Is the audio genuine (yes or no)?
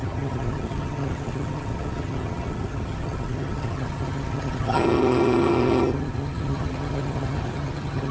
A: no